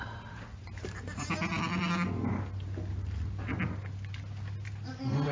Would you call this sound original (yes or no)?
yes